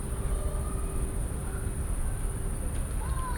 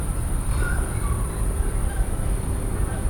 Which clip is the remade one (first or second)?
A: second